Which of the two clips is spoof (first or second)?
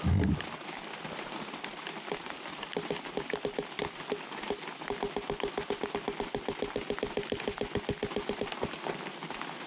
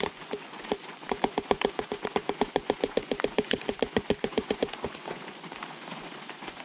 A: second